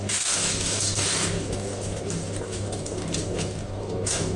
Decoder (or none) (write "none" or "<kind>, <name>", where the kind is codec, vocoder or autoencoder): codec, DAC